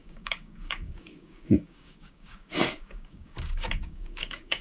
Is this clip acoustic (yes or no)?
no